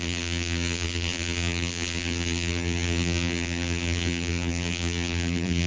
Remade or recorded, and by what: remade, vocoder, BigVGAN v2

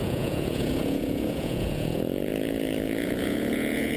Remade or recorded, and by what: remade, vocoder, Vocos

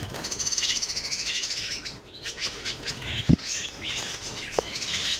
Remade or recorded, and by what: remade, autoencoder, DAC-VAE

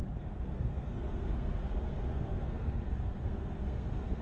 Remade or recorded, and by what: remade, codec, SNAC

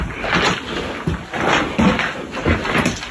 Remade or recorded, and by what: recorded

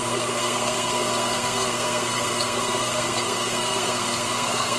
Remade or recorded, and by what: remade, codec, SNAC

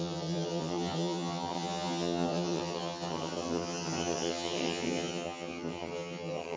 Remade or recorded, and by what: remade, vocoder, HiFi-GAN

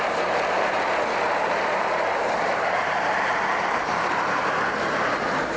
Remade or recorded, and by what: remade, vocoder, BigVGAN v2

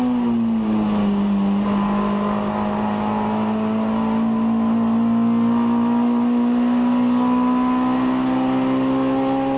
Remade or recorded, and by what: recorded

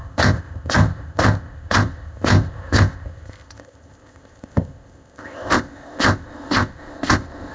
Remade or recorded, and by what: remade, codec, ZipCodec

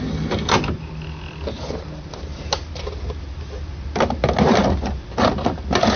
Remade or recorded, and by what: recorded